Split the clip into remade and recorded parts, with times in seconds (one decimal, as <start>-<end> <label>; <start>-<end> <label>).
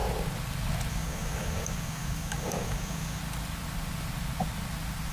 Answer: 0.0-0.9 recorded; 0.9-3.2 remade; 3.2-5.1 recorded